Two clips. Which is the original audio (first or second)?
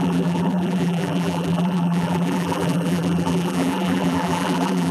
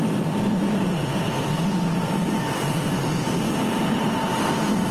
second